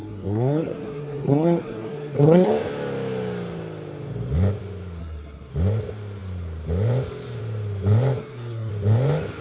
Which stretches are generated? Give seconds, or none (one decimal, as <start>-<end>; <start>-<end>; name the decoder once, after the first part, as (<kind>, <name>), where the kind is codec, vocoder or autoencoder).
0.0-2.5 (codec, SNAC); 5.0-5.5; 8.2-8.7